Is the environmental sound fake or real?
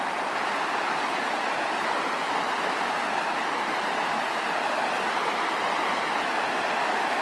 real